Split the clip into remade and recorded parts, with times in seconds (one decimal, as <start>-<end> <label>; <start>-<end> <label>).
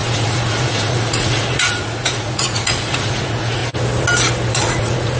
0.0-3.6 remade; 3.6-4.5 recorded; 4.5-5.2 remade